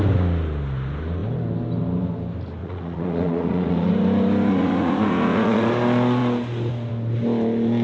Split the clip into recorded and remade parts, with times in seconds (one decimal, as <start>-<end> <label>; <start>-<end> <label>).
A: 0.0-2.6 recorded; 2.6-3.9 remade; 3.9-4.5 recorded; 4.5-5.7 remade; 5.7-7.8 recorded